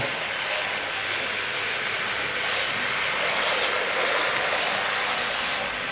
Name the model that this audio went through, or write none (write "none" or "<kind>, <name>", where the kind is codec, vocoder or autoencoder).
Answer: none